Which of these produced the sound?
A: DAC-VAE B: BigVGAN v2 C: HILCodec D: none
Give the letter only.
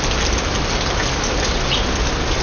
D